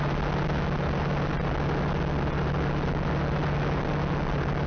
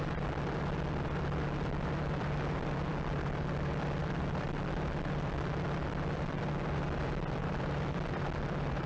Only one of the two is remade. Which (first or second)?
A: second